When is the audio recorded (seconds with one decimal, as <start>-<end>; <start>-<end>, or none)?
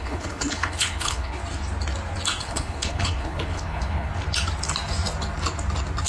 1.4-2.4; 4.1-6.1